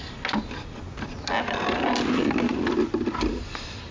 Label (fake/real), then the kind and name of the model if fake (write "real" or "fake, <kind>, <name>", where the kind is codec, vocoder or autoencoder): real